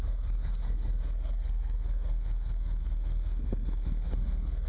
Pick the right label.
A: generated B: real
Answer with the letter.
A